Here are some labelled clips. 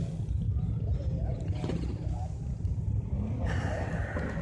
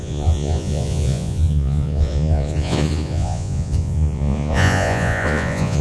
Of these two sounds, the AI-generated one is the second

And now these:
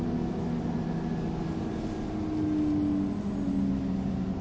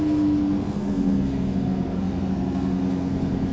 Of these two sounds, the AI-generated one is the second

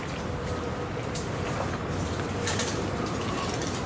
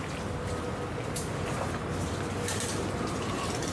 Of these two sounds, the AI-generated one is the first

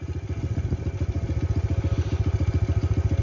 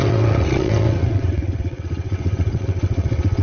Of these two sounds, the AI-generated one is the second